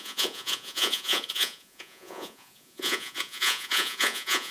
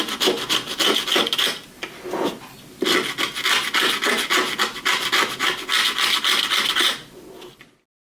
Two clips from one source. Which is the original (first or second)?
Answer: second